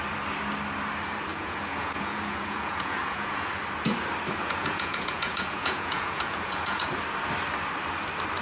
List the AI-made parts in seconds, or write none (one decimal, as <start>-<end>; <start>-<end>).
1.3-3.5; 4.4-6.9